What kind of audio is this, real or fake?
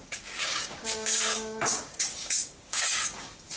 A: fake